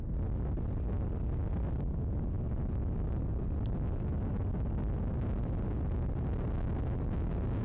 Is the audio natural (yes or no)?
yes